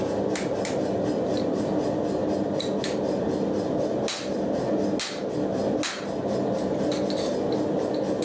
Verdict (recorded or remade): recorded